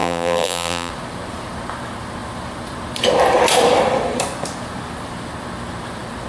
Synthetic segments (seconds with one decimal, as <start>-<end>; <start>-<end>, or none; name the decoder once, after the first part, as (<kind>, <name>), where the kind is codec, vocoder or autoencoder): 0.0-0.9 (vocoder, BigVGAN v2)